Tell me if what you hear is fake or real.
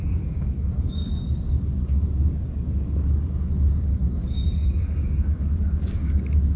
fake